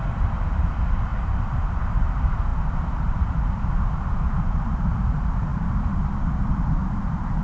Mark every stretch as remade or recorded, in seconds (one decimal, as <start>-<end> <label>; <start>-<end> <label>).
0.0-7.4 remade